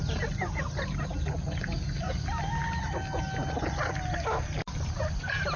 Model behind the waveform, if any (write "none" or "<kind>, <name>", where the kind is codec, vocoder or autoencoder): none